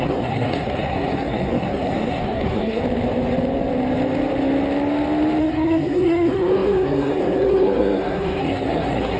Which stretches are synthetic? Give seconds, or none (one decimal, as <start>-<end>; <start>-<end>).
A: 0.0-2.8; 5.4-9.2